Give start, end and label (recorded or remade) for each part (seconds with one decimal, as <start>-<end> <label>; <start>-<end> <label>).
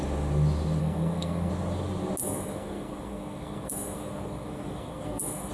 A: 0.0-0.8 recorded; 0.8-1.5 remade; 1.5-2.2 recorded; 2.2-5.5 remade